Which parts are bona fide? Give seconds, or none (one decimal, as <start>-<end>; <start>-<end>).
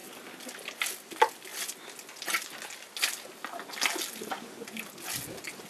0.0-5.7